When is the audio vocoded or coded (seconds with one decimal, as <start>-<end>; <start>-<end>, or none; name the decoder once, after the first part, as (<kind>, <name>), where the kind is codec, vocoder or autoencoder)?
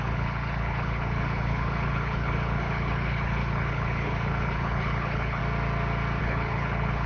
0.0-5.4 (codec, HILCodec); 6.2-7.1